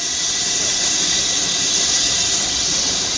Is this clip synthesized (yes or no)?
no